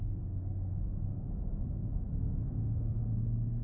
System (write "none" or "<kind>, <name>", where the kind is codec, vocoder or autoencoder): codec, SNAC